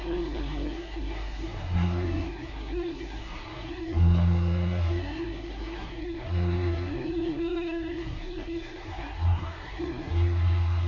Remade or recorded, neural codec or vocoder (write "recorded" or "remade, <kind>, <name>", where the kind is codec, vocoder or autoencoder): remade, codec, SNAC